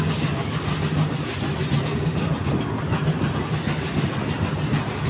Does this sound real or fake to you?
real